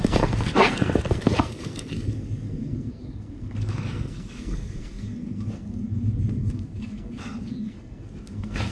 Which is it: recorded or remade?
remade